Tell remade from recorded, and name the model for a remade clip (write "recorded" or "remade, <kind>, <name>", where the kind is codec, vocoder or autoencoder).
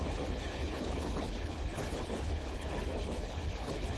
remade, codec, HILCodec